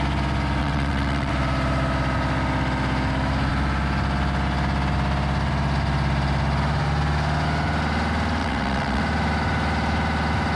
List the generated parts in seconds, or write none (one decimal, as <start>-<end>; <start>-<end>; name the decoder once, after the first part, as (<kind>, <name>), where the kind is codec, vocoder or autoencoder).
0.6-1.3 (vocoder, WaveNeXt); 8.4-9.0